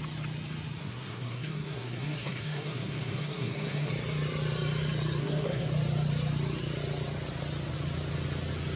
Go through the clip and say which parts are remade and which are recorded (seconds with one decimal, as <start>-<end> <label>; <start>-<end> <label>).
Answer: 0.0-0.8 recorded; 0.8-3.9 remade; 3.9-5.2 recorded; 5.2-5.7 remade; 5.7-8.8 recorded

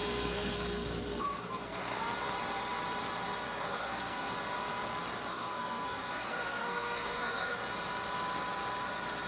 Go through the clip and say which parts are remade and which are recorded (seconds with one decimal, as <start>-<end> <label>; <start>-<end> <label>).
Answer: 0.0-2.0 remade; 2.0-3.6 recorded; 3.6-4.3 remade; 4.3-5.3 recorded; 5.3-7.6 remade; 7.6-9.3 recorded